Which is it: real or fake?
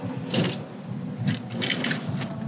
real